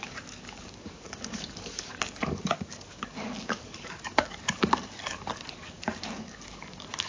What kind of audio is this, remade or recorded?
remade